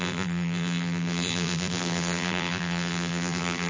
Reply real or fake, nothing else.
fake